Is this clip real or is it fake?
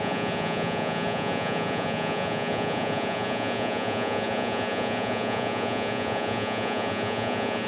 fake